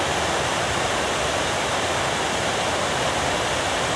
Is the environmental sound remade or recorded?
recorded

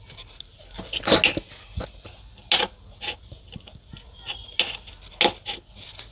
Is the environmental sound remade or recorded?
recorded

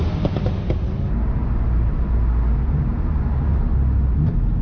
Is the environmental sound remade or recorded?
recorded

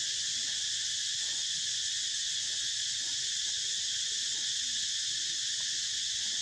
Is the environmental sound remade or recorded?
remade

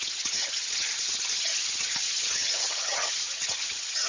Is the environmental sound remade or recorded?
remade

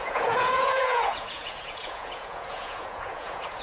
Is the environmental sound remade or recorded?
remade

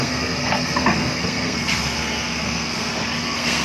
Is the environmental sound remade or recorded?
remade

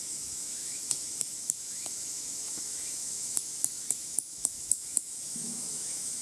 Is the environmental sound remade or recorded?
remade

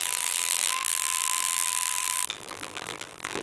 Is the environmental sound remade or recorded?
remade